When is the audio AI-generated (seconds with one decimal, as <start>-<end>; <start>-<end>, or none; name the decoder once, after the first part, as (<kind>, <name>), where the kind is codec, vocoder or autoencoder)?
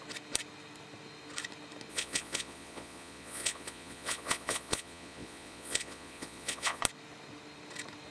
1.9-6.8 (vocoder, Vocos)